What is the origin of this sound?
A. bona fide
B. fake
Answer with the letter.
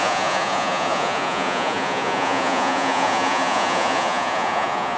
B